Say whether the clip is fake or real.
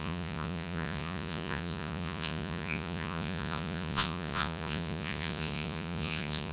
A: fake